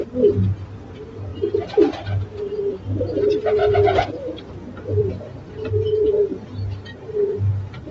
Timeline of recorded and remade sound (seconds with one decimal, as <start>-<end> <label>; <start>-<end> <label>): 0.0-1.3 recorded; 1.3-2.4 remade; 2.4-3.6 recorded; 3.6-5.1 remade; 5.1-7.9 recorded